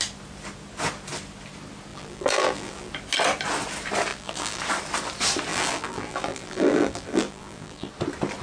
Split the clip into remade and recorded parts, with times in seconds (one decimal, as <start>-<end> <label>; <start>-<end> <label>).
0.0-1.9 recorded; 1.9-2.9 remade; 2.9-4.1 recorded; 4.1-4.6 remade; 4.6-5.5 recorded; 5.5-7.9 remade; 7.9-8.4 recorded